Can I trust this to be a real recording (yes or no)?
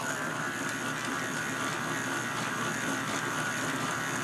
yes